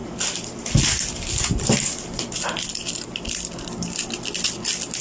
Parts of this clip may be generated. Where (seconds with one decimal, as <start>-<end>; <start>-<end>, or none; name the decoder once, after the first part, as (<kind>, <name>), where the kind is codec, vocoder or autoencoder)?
none